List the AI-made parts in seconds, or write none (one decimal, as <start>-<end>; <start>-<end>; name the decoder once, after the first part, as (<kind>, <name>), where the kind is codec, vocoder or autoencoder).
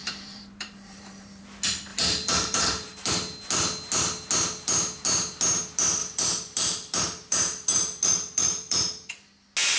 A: 0.0-1.4 (vocoder, BigVGAN v2); 1.9-3.1; 6.0-9.1